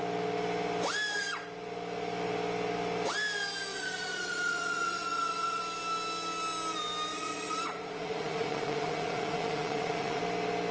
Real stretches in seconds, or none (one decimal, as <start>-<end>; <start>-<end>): 0.0-3.7; 5.6-7.1; 10.2-10.7